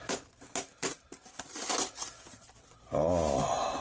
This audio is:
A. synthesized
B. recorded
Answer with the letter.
B